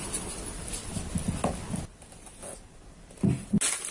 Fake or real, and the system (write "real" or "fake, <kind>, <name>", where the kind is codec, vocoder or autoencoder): real